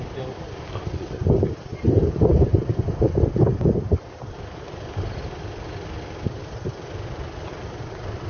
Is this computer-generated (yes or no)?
no